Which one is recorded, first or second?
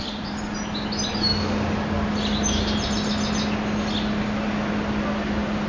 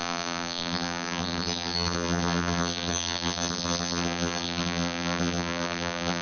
first